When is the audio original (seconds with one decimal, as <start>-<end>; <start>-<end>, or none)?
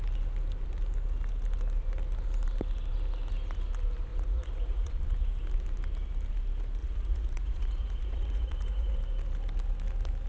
0.0-4.1; 4.9-6.8; 9.0-10.3